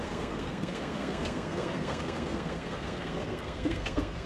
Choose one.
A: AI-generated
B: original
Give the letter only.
A